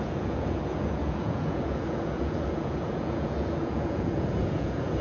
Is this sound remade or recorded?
remade